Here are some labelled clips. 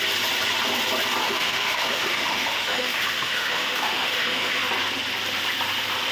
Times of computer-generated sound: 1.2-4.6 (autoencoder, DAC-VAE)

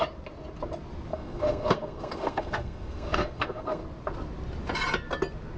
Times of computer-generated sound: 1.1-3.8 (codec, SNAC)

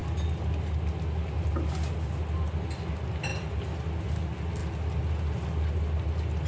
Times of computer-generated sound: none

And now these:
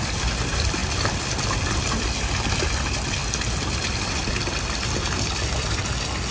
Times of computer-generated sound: 0.8-2.7 (vocoder, BigVGAN v2)

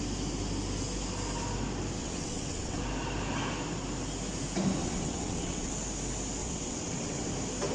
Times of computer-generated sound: 2.0-2.8 (vocoder, WaveNeXt); 4.8-5.7; 6.4-7.3